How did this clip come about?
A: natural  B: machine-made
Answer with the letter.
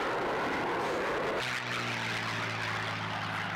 A